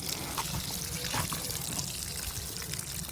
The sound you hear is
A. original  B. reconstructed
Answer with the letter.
A